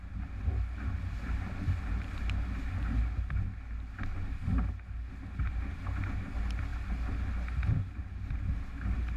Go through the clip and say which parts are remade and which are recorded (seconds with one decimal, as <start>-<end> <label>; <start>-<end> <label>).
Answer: 0.0-9.2 recorded